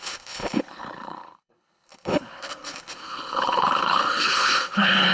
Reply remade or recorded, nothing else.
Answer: remade